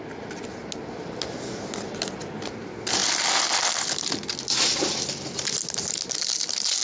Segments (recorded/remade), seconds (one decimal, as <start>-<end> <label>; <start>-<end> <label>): 0.0-6.8 recorded